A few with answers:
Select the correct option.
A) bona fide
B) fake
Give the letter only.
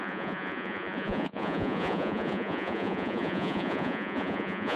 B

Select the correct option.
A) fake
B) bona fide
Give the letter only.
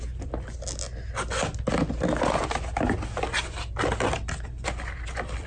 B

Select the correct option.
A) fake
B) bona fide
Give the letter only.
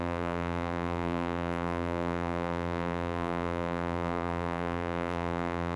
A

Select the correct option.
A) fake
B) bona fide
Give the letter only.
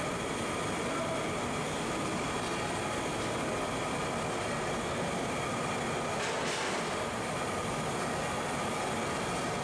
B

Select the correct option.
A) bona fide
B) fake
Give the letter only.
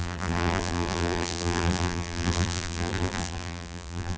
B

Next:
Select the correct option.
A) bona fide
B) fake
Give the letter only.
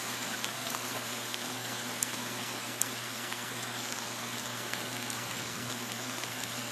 B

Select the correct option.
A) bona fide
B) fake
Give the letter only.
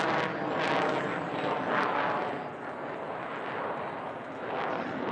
A